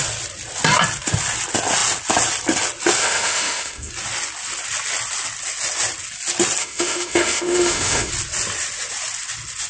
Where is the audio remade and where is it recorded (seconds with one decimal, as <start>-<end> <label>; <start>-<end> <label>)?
0.0-3.0 recorded; 3.0-3.9 remade; 3.9-6.6 recorded; 6.6-8.1 remade; 8.1-9.7 recorded